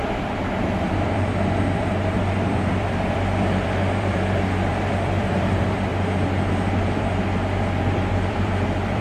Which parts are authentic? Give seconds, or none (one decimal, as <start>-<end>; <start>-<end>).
5.9-8.1